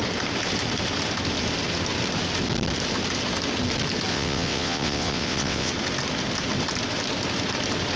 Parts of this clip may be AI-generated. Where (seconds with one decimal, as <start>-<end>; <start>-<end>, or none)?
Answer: 4.1-5.7